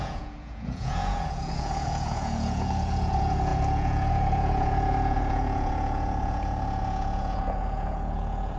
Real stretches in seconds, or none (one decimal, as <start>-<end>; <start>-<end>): none